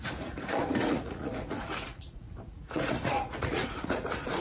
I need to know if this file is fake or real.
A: fake